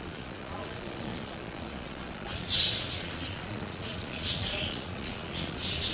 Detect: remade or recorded remade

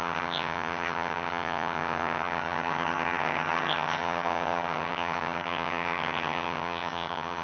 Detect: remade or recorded remade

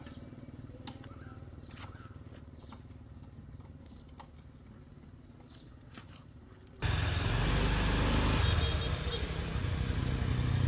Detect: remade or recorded recorded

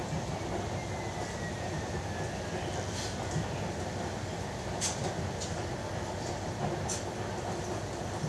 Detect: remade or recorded recorded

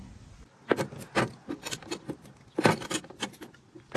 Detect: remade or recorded recorded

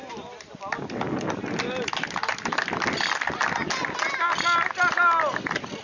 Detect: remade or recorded recorded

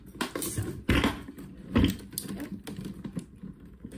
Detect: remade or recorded recorded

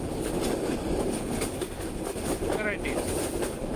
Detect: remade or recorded remade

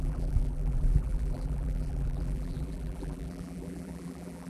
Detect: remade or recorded remade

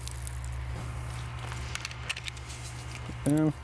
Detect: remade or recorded recorded